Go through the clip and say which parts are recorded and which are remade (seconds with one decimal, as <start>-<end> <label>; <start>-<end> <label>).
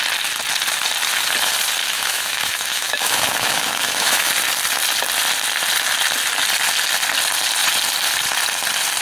0.0-1.8 recorded; 1.8-4.3 remade; 4.3-9.0 recorded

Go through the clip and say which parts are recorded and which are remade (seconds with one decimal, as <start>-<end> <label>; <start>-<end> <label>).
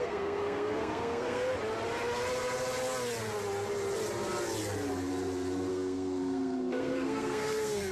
0.0-1.5 remade; 1.5-5.7 recorded; 5.7-7.9 remade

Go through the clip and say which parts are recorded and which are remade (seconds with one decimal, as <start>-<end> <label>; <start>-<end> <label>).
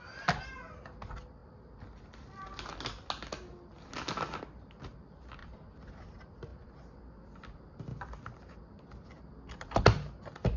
0.0-10.6 recorded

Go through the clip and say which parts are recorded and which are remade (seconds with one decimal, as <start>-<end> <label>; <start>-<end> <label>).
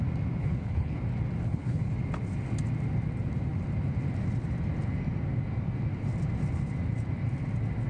0.0-0.4 recorded; 0.4-1.0 remade; 1.0-1.4 recorded; 1.4-1.9 remade; 1.9-7.9 recorded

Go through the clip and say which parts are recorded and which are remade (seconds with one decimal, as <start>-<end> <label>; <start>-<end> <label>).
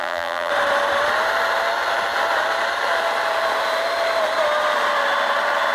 0.0-0.5 remade; 0.5-5.7 recorded